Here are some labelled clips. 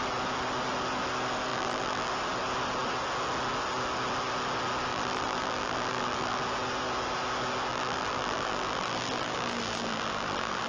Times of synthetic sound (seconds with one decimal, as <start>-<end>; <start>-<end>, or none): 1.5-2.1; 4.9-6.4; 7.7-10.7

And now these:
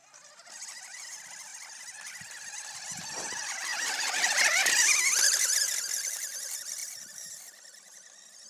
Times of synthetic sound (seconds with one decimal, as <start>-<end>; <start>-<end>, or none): 3.7-4.8; 6.8-7.4

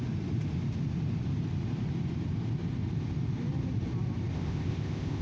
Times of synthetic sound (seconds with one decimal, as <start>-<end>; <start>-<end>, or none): 4.3-5.2

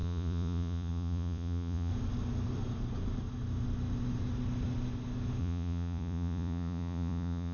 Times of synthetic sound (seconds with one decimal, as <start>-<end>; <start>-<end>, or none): 0.0-1.9; 5.4-7.5